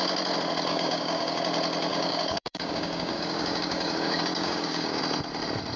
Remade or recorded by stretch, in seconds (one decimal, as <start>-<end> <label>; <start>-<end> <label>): 0.0-0.7 recorded; 0.7-1.4 remade; 1.4-1.9 recorded; 1.9-5.0 remade; 5.0-5.8 recorded